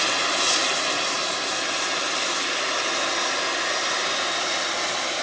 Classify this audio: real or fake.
real